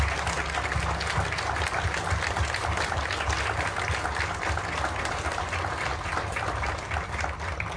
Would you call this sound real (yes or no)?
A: yes